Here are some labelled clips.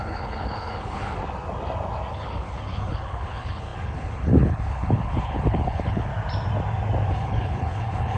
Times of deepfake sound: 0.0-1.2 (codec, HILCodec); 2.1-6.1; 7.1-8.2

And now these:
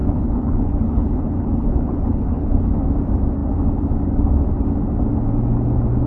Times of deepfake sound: 0.0-2.9 (codec, HILCodec)

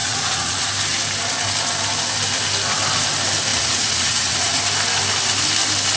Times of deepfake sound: 0.0-0.6 (vocoder, Vocos); 3.5-4.6

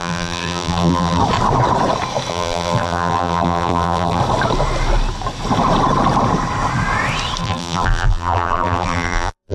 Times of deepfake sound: 0.0-1.2 (vocoder, BigVGAN v2); 2.3-4.2; 7.4-9.5